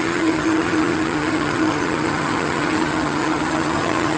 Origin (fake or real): fake